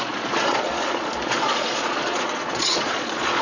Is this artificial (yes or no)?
yes